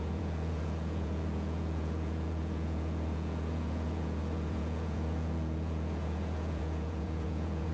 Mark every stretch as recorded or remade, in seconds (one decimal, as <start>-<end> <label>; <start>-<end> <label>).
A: 0.0-7.7 remade